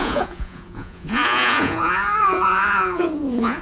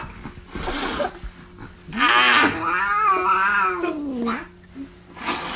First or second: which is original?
second